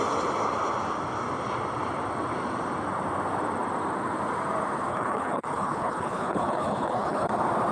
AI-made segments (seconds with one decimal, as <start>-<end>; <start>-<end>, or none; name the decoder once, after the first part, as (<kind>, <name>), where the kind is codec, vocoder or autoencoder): 4.9-7.3 (codec, HILCodec)